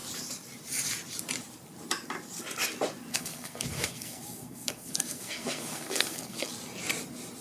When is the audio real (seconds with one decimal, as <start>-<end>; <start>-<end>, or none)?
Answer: 0.0-3.1; 6.5-7.4